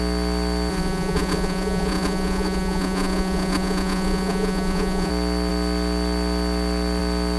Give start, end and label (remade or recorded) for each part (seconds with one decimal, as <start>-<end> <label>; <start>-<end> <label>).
0.0-0.7 recorded; 0.7-5.1 remade; 5.1-7.4 recorded